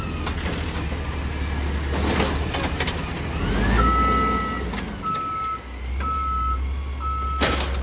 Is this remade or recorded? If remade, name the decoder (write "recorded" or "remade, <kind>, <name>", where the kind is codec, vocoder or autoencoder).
recorded